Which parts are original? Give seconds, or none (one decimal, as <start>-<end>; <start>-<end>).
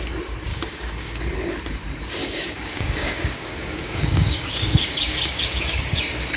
0.0-0.5; 1.2-2.2; 6.0-6.4